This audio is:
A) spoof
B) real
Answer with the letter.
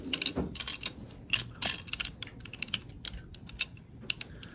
B